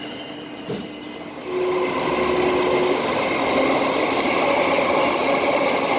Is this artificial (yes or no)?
no